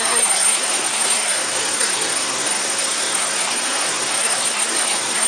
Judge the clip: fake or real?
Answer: fake